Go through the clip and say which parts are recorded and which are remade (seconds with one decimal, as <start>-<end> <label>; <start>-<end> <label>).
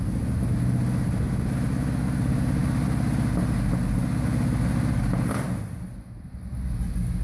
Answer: 0.0-7.2 recorded